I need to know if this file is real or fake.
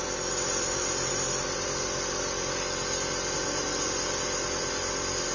real